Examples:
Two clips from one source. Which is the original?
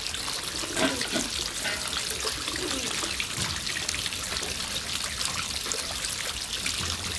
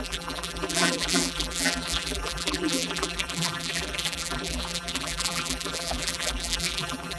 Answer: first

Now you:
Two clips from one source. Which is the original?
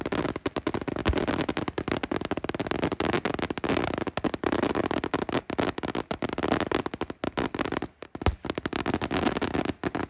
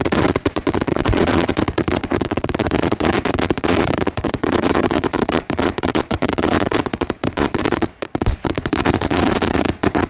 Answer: first